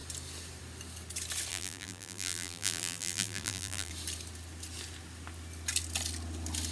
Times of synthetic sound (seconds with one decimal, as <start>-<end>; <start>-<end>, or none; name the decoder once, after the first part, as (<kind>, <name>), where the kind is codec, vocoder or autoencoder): 1.5-3.9 (vocoder, BigVGAN v2)